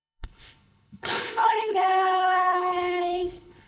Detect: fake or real fake